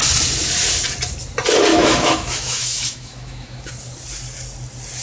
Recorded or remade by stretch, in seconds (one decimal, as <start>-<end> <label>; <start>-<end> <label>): 0.0-1.7 recorded; 1.7-3.7 remade; 3.7-5.0 recorded